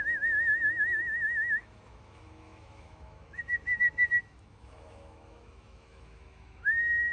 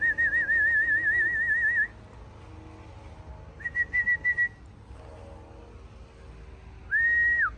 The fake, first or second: first